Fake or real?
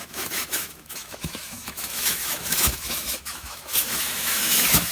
fake